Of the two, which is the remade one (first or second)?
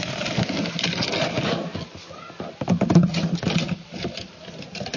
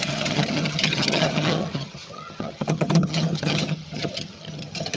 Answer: second